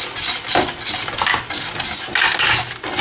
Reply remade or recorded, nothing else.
recorded